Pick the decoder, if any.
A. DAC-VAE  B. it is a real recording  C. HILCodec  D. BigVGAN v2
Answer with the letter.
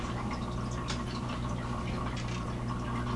B